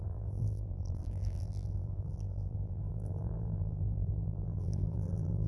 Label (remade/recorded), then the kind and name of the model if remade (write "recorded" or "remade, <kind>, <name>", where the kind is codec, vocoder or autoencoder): remade, vocoder, BigVGAN v2